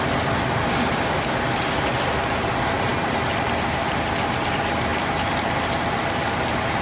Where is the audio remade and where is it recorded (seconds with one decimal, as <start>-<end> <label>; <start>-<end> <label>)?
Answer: 0.0-6.8 recorded